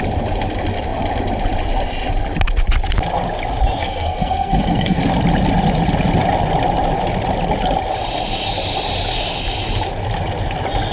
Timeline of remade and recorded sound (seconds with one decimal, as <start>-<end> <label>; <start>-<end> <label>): 0.0-3.8 recorded; 3.8-5.0 remade; 5.0-10.9 recorded